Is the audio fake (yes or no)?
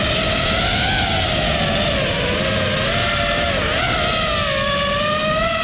no